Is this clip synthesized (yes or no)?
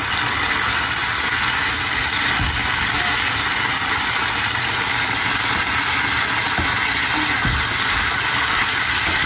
no